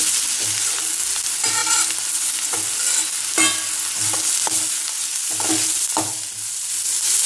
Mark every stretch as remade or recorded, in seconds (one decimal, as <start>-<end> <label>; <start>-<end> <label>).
0.0-7.3 recorded